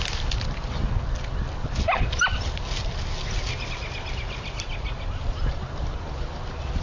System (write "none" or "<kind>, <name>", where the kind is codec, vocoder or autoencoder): none